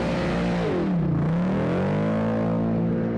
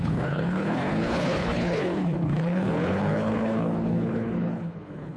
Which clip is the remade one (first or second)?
second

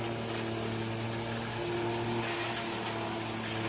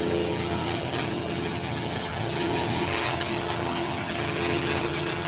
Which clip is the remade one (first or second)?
second